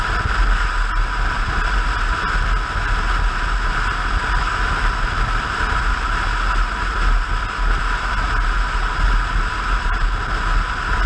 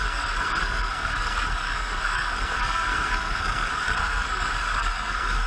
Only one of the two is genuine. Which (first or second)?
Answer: first